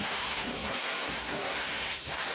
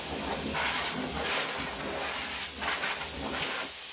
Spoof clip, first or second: first